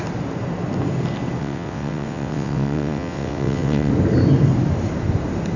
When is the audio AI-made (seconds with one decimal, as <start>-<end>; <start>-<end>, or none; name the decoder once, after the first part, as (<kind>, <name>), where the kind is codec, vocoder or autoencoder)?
1.4-3.9 (vocoder, WaveNeXt)